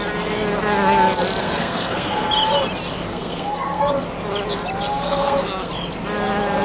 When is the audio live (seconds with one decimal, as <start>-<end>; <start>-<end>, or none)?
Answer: 0.0-1.4; 2.3-3.1; 3.9-4.9; 5.7-6.6